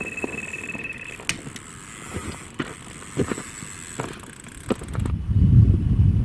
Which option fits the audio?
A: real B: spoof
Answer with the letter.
A